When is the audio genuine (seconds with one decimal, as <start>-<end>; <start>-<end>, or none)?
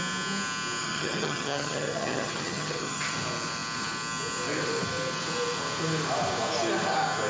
0.0-0.8; 3.1-7.3